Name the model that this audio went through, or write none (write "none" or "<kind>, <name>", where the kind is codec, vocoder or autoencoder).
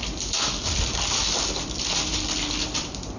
vocoder, BigVGAN v2